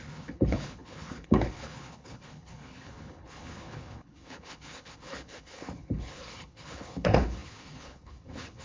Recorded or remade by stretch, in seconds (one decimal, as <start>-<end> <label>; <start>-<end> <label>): 0.0-8.6 remade